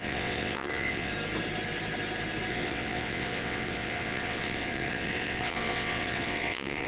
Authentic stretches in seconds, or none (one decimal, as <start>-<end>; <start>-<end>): 1.1-2.5